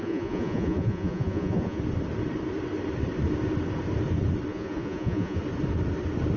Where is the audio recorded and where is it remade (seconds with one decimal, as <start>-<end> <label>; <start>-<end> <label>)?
0.0-1.8 remade; 1.8-4.5 recorded; 4.5-5.4 remade; 5.4-6.4 recorded